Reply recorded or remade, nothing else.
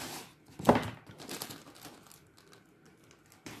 recorded